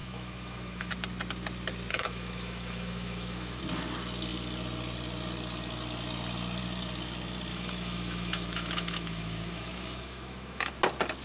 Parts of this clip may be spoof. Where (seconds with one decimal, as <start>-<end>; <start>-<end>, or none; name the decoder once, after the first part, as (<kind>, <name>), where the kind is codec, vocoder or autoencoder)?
0.0-0.9 (autoencoder, DAC-VAE); 1.9-3.6; 7.5-10.7